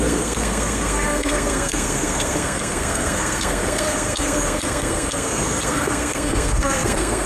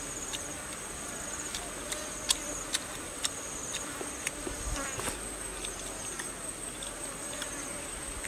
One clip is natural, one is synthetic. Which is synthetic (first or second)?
first